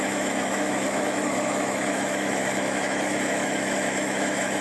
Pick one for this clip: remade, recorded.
remade